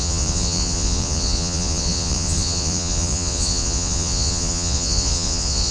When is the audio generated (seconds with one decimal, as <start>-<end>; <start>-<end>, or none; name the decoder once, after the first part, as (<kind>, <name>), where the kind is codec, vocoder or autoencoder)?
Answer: 0.0-5.7 (vocoder, Vocos)